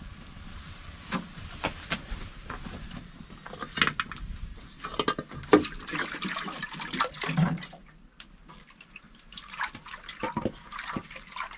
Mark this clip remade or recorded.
recorded